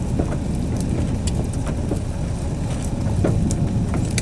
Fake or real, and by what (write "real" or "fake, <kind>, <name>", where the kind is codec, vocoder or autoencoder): real